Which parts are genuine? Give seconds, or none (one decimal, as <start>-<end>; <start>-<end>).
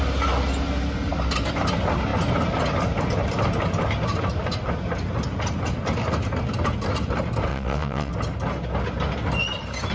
0.0-7.5; 8.1-9.9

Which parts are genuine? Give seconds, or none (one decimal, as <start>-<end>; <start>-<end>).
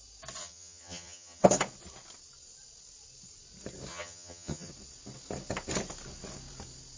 0.0-0.4; 1.4-3.9; 4.7-7.0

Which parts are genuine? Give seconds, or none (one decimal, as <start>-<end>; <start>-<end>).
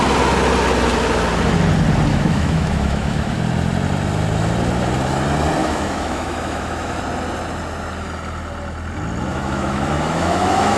0.0-2.1; 3.4-5.6; 7.0-9.3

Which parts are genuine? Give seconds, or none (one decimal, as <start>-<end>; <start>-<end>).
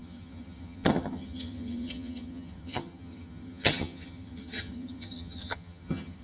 none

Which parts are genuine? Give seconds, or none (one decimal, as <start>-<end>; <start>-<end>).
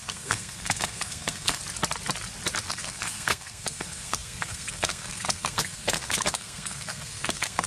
1.6-2.7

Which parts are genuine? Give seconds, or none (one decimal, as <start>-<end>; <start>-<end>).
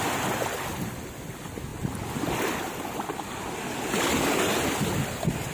0.0-5.5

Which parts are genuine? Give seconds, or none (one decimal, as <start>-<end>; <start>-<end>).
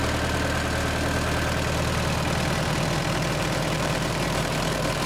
0.0-3.0